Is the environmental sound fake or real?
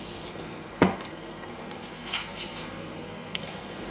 fake